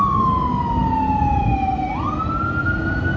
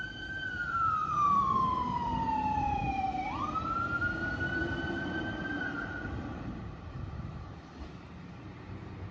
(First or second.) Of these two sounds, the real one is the first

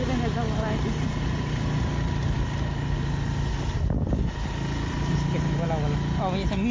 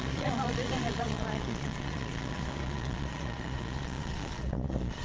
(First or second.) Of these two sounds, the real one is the first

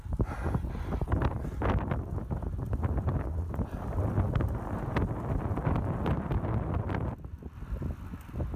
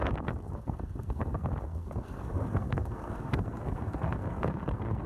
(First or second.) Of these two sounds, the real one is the first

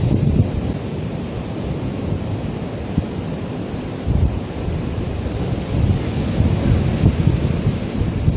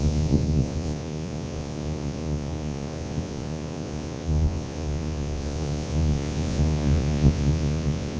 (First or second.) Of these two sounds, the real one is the first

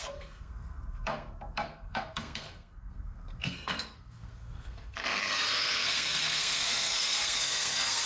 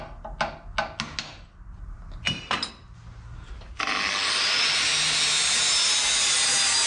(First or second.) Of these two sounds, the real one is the second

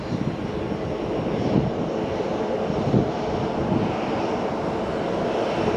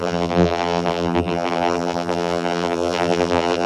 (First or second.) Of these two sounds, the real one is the first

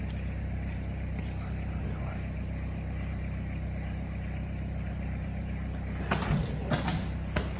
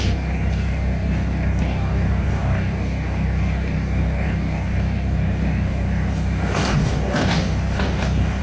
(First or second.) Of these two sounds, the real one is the first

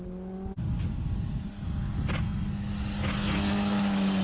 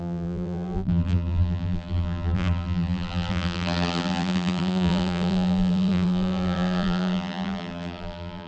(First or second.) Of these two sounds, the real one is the first